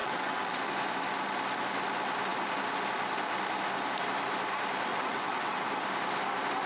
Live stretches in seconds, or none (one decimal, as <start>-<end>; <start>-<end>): 0.6-4.9; 5.7-6.7